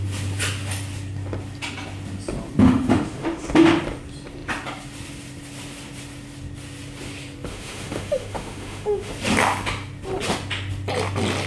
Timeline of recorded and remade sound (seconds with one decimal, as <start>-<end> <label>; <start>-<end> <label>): 0.0-2.6 recorded; 2.6-3.5 remade; 3.5-7.5 recorded; 7.5-9.1 remade; 9.1-11.5 recorded